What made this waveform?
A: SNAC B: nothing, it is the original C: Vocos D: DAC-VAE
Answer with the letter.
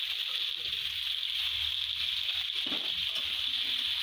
B